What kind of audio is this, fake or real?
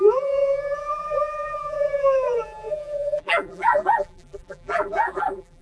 fake